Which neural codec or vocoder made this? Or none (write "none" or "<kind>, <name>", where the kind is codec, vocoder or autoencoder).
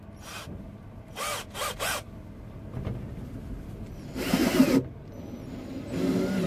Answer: none